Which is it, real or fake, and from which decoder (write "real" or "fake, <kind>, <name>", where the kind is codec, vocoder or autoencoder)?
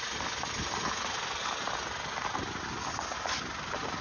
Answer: real